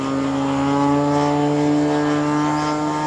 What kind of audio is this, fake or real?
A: real